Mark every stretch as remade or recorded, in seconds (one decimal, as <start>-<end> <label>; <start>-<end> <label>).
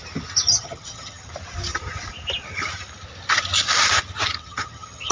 0.0-0.5 recorded; 0.5-1.3 remade; 1.3-4.4 recorded; 4.4-5.1 remade